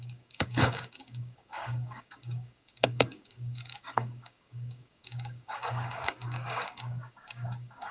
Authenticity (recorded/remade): remade